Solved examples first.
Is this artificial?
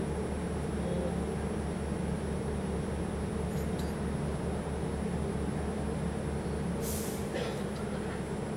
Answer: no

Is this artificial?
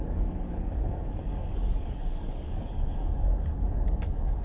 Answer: yes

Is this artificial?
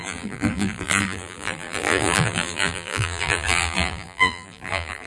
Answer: yes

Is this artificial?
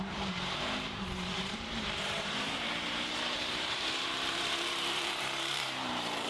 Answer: yes